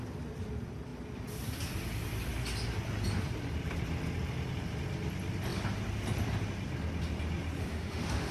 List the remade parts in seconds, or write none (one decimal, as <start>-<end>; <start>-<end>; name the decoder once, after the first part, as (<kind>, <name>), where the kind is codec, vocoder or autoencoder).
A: 7.6-8.3 (autoencoder, DAC-VAE)